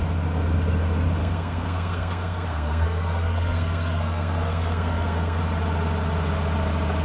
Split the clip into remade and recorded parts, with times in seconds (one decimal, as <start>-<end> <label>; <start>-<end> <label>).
0.0-1.2 recorded; 1.2-5.4 remade; 5.4-7.0 recorded